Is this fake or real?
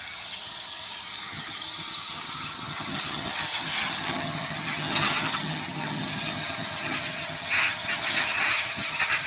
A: fake